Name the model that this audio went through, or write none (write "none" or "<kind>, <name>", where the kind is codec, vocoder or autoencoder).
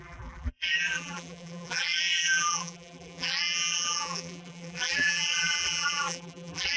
vocoder, BigVGAN v2